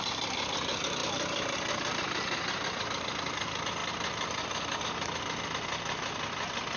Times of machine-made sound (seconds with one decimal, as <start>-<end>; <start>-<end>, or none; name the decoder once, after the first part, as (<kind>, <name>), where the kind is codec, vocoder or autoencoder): none